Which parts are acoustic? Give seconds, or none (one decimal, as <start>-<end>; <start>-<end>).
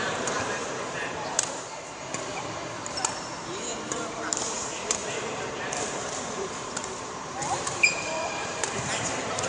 3.7-4.2